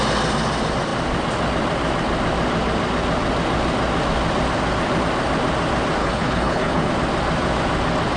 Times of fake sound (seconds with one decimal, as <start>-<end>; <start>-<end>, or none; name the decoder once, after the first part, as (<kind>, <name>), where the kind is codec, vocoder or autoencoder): 6.0-6.9 (codec, HILCodec)